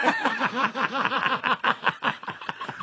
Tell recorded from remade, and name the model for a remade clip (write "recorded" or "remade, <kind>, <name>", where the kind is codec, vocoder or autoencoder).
remade, vocoder, WaveNeXt